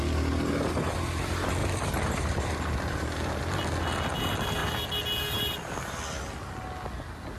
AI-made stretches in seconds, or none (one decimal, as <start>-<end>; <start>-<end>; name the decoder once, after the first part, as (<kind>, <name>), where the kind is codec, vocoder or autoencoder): 1.6-3.4 (vocoder, BigVGAN v2)